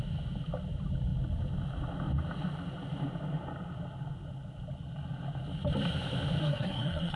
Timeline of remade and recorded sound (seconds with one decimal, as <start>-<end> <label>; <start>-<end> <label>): 0.0-6.4 recorded; 6.4-7.2 remade

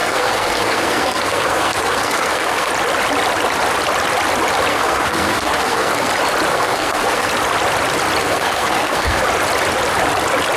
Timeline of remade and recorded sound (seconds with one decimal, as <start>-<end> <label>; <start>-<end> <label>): 0.0-2.7 remade; 2.7-4.7 recorded; 4.7-6.1 remade; 6.1-6.5 recorded; 6.5-7.3 remade; 7.3-8.2 recorded; 8.2-9.2 remade; 9.2-10.6 recorded